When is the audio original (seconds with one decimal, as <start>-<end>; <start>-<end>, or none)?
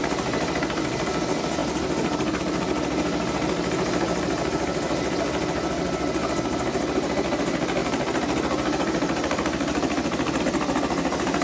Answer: 0.0-7.8; 10.4-11.4